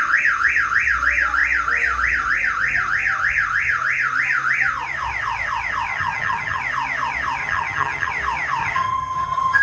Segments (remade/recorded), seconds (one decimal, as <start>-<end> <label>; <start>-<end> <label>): 0.0-5.9 recorded; 5.9-6.6 remade; 6.6-7.4 recorded; 7.4-8.1 remade; 8.1-8.6 recorded; 8.6-9.6 remade